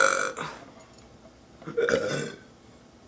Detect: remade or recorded recorded